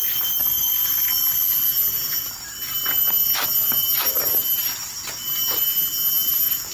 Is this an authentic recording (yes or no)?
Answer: yes